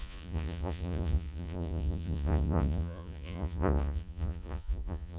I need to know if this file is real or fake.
fake